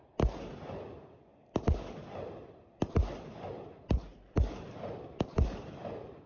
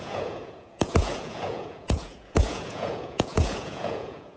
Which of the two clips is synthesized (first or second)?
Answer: second